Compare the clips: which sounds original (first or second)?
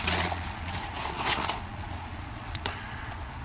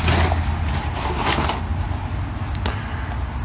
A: second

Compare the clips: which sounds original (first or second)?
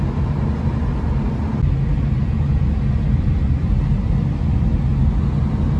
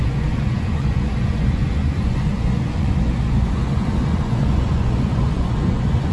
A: first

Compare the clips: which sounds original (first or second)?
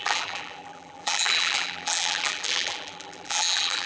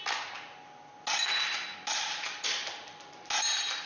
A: second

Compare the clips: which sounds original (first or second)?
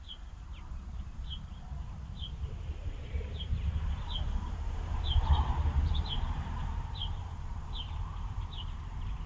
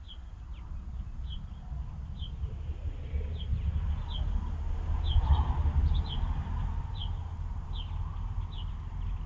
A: second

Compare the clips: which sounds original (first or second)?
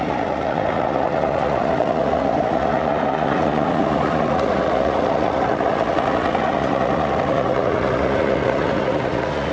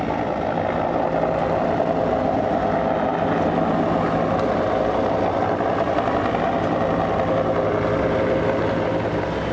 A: second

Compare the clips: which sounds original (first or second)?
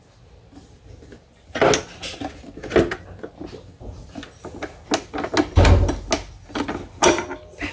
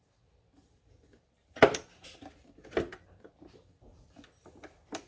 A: first